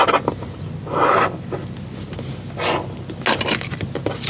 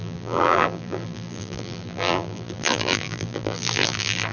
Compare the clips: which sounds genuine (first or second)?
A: first